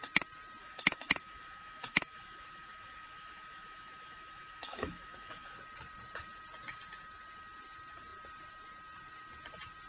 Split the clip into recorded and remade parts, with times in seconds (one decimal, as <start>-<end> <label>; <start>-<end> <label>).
0.0-0.6 recorded; 0.6-5.6 remade; 5.6-9.9 recorded